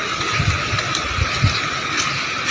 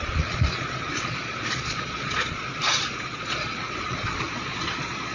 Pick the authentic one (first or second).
first